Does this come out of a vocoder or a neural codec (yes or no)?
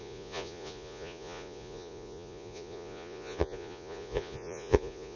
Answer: yes